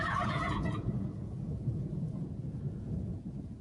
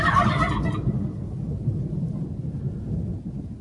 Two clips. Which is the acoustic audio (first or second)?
second